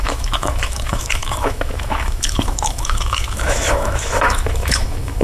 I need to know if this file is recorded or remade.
remade